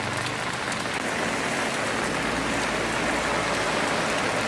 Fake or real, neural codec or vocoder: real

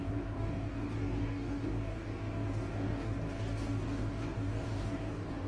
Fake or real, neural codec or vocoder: fake, codec, DAC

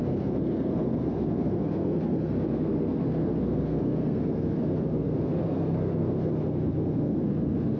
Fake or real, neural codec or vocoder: fake, codec, SNAC